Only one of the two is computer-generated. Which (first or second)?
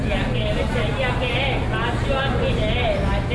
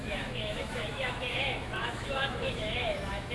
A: second